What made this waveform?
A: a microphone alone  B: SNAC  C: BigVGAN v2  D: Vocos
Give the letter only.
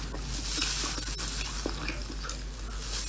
A